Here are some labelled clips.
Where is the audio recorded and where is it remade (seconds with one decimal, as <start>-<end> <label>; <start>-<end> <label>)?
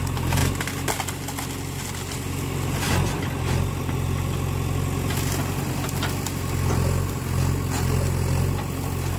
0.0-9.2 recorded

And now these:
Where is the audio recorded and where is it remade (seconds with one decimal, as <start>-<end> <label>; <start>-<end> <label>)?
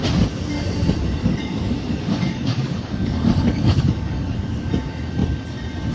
0.0-1.2 recorded; 1.2-4.7 remade; 4.7-5.9 recorded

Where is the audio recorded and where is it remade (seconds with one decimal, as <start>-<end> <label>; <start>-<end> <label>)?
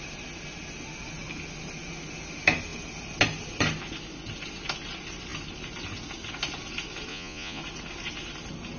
0.0-7.1 recorded; 7.1-7.6 remade; 7.6-8.8 recorded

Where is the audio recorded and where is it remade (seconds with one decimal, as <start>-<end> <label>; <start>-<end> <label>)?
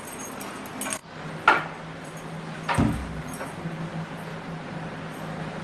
0.0-1.0 recorded; 1.0-1.6 remade; 1.6-3.0 recorded; 3.0-3.8 remade; 3.8-4.3 recorded; 4.3-5.0 remade; 5.0-5.6 recorded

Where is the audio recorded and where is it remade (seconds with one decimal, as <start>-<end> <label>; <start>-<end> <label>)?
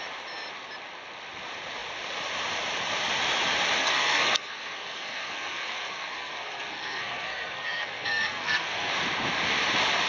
0.0-3.8 recorded; 3.8-8.9 remade; 8.9-10.1 recorded